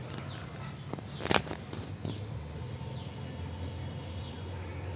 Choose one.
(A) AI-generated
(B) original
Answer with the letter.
B